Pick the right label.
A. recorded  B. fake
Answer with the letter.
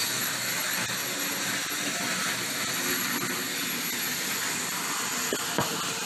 A